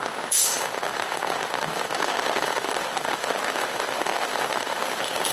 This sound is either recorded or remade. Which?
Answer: remade